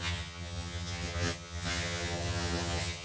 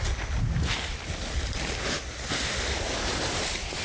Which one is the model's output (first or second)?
first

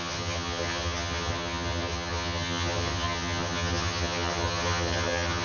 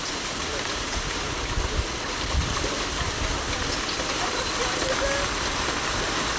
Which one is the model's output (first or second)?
first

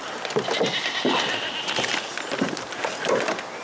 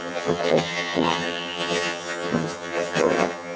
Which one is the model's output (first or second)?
second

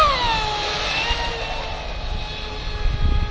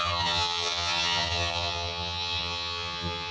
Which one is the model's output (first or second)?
second